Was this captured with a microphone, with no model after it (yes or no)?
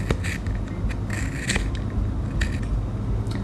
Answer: yes